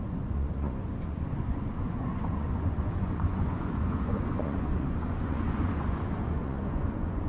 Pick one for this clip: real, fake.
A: fake